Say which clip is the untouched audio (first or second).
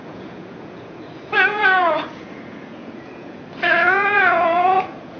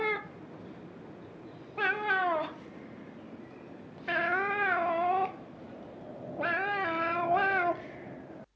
second